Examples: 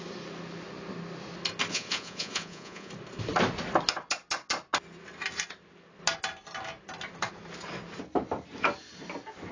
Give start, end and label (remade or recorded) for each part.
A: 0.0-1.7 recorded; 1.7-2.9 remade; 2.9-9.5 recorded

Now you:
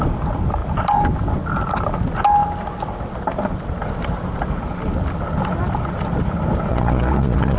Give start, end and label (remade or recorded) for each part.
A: 0.0-6.7 recorded; 6.7-7.6 remade